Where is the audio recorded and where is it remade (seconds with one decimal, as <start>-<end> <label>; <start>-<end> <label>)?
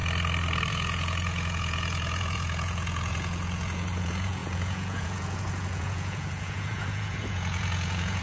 0.0-0.7 recorded; 0.7-8.2 remade